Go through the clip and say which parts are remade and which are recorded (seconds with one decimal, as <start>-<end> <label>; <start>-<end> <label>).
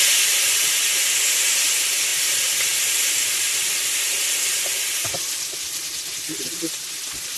0.0-7.4 recorded